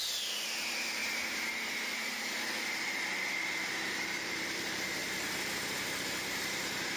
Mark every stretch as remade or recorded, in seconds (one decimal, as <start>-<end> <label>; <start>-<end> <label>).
0.0-1.0 remade; 1.0-3.9 recorded; 3.9-5.0 remade; 5.0-6.4 recorded; 6.4-7.0 remade